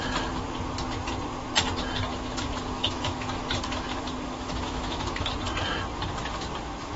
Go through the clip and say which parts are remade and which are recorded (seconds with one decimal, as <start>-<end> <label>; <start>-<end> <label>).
0.0-2.1 recorded; 2.1-5.3 remade; 5.3-7.0 recorded